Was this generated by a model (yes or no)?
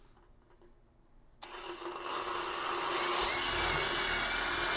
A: no